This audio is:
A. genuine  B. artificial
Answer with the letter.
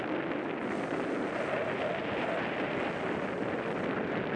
A